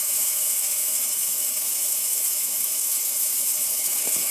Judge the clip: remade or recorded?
remade